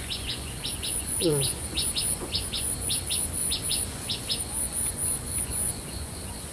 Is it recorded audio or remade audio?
remade